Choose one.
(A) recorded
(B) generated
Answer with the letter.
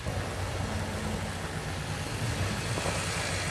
A